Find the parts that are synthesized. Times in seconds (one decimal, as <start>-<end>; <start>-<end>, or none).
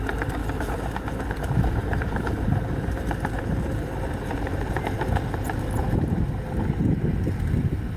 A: 0.4-4.8